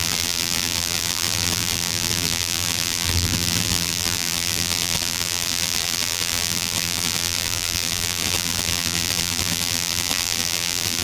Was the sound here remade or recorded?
remade